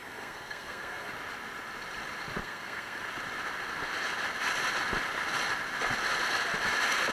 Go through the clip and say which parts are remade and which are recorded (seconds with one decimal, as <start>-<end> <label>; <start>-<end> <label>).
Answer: 0.0-1.1 remade; 1.1-2.4 recorded; 2.4-3.0 remade; 3.0-7.1 recorded